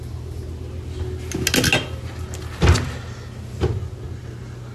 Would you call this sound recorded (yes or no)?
yes